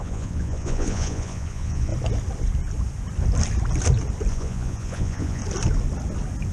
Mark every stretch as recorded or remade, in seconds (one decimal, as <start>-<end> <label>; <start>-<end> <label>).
0.0-1.9 remade; 1.9-4.3 recorded; 4.3-5.4 remade; 5.4-6.5 recorded